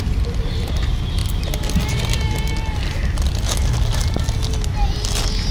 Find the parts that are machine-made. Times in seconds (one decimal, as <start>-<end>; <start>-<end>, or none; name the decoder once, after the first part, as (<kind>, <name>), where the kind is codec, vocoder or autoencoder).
none